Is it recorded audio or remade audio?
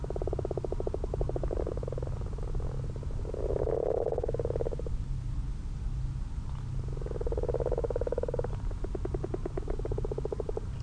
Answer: recorded